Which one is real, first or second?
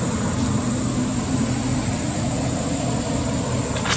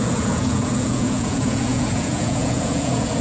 first